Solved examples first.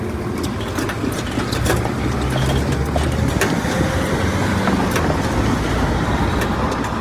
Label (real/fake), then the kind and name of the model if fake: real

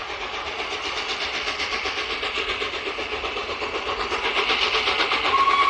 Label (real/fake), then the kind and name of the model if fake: real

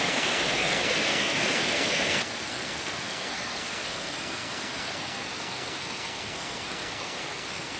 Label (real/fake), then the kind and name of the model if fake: fake, codec, SNAC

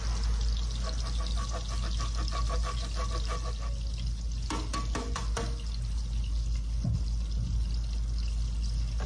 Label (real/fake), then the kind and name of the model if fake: real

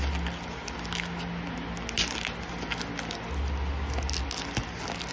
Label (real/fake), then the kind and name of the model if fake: real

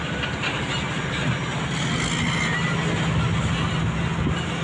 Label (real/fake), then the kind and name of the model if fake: real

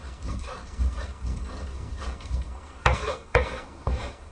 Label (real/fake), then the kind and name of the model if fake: fake, codec, SNAC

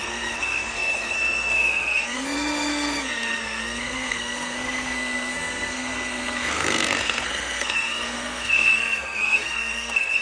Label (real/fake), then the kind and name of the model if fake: fake, codec, SNAC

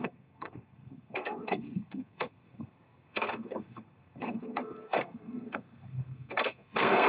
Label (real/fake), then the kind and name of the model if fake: fake, codec, SNAC